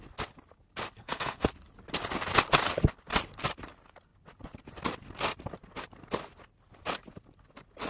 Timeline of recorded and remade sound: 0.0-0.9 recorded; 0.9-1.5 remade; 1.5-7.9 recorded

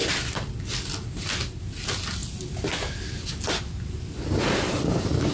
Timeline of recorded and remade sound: 0.0-5.3 recorded

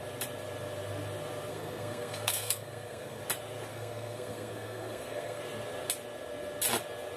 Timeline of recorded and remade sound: 0.0-1.5 recorded; 1.5-3.2 remade; 3.2-3.7 recorded; 3.7-5.4 remade; 5.4-7.2 recorded

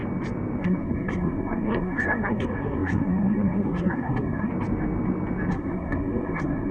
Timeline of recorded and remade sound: 0.0-0.6 recorded; 0.6-4.5 remade; 4.5-5.5 recorded; 5.5-6.7 remade

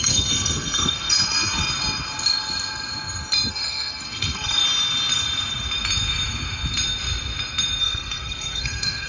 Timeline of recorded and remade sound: 0.0-1.6 remade; 1.6-3.5 recorded; 3.5-4.6 remade; 4.6-7.8 recorded; 7.8-9.1 remade